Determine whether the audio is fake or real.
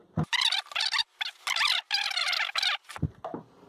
real